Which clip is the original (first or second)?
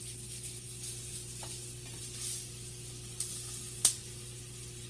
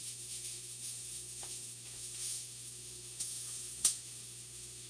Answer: first